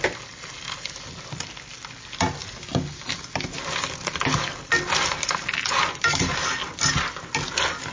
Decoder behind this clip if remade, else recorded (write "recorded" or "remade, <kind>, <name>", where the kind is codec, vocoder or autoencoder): recorded